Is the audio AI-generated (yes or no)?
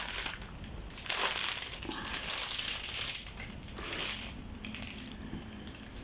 no